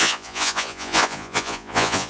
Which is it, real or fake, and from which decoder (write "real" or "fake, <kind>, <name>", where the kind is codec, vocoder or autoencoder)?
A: fake, vocoder, Vocos